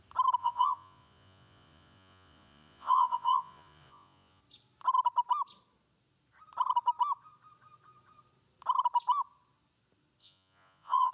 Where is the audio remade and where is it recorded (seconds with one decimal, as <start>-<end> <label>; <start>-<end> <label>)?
0.0-0.4 recorded; 0.4-4.4 remade; 4.4-10.2 recorded; 10.2-11.1 remade